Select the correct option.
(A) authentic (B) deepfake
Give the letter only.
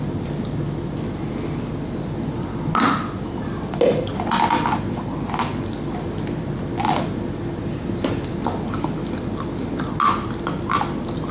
A